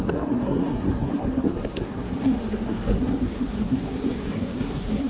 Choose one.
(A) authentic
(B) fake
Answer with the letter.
B